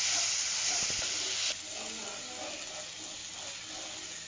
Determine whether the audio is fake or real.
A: real